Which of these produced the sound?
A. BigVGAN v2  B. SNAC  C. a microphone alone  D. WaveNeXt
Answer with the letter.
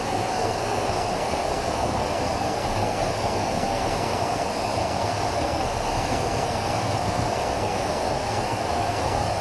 B